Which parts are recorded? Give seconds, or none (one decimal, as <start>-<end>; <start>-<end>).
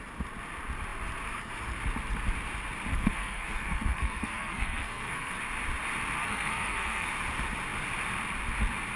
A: 0.0-2.9; 5.4-6.2; 7.1-9.0